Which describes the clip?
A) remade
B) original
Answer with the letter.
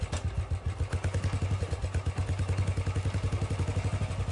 B